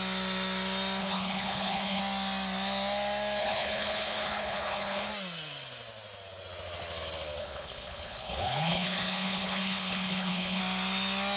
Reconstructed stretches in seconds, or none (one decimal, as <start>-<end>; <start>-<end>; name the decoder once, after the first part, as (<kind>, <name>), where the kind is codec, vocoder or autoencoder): 1.0-2.0 (codec, HILCodec); 3.4-5.1; 7.4-10.6